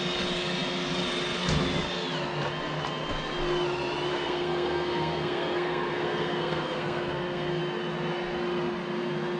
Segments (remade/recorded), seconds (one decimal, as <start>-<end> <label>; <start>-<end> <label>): 0.0-4.1 recorded; 4.1-7.6 remade; 7.6-9.4 recorded